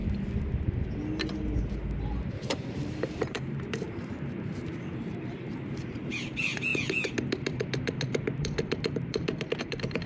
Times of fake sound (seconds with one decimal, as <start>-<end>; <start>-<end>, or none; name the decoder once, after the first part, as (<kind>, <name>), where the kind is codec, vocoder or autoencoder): 2.3-6.7 (vocoder, BigVGAN v2); 9.6-10.1